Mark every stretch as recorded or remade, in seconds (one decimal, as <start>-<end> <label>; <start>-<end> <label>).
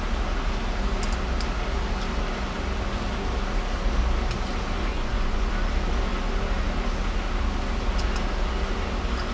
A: 0.0-4.9 recorded; 4.9-5.5 remade; 5.5-9.3 recorded